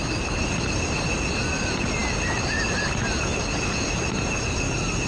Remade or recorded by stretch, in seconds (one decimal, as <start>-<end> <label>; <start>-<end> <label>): 0.0-5.1 recorded